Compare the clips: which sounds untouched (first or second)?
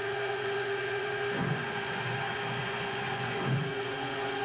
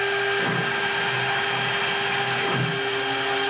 second